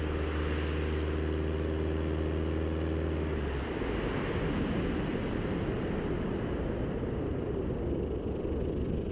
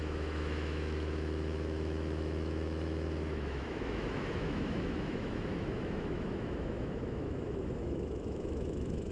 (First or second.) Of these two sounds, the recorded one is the first